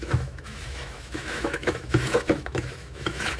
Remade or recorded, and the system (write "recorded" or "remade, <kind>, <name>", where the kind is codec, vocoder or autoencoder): remade, autoencoder, DAC-VAE